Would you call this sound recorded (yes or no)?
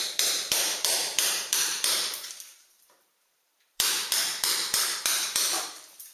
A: no